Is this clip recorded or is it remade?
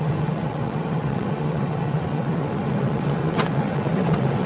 remade